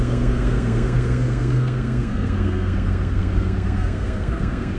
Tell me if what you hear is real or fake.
fake